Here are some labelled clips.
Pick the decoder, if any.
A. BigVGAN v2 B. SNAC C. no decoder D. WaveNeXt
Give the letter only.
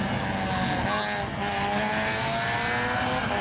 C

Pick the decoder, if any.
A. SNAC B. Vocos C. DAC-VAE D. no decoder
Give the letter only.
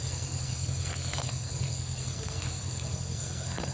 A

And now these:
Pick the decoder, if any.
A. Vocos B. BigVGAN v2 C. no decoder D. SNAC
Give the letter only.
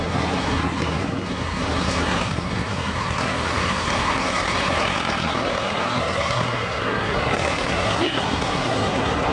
D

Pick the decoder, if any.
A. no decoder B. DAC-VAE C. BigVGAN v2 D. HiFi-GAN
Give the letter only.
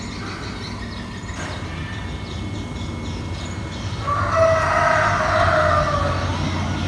A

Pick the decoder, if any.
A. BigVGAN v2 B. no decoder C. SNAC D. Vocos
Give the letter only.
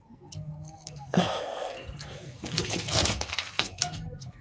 C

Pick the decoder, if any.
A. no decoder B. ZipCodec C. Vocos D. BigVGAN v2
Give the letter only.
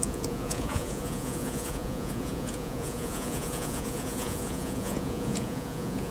C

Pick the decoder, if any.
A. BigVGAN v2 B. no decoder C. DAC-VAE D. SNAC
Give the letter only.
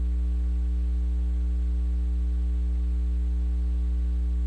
B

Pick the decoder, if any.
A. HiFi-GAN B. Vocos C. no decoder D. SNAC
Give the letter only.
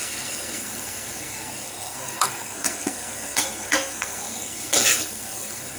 D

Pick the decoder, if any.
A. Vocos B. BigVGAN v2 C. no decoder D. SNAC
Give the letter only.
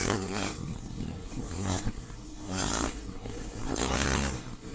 D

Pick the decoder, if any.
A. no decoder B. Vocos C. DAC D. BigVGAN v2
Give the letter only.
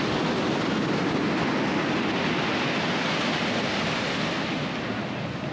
A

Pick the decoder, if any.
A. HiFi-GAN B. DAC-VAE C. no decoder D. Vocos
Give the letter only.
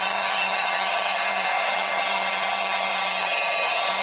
A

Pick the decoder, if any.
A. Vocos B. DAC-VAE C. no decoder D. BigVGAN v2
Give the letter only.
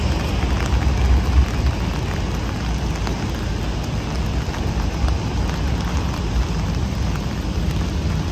C